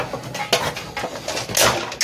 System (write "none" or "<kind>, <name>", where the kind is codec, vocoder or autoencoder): none